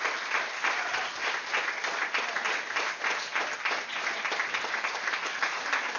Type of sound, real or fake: real